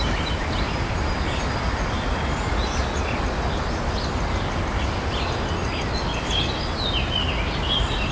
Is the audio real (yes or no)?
yes